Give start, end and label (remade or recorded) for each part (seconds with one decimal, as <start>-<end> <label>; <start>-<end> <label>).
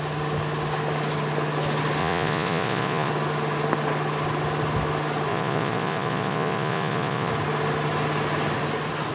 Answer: 0.0-2.0 recorded; 2.0-3.1 remade; 3.1-5.3 recorded; 5.3-7.3 remade; 7.3-9.1 recorded